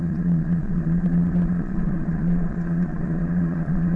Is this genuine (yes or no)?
no